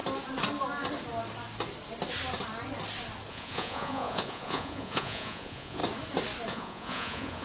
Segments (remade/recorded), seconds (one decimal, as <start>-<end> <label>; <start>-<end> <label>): 0.0-3.3 recorded; 3.3-5.8 remade; 5.8-6.5 recorded; 6.5-7.4 remade